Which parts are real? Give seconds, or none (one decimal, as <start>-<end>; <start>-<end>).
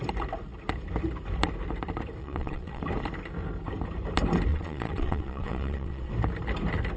0.0-2.2; 2.8-4.5; 6.1-7.0